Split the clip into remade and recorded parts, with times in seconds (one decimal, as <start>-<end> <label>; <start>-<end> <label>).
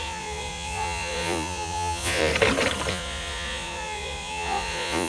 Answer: 0.0-2.3 remade; 2.3-2.9 recorded; 2.9-5.1 remade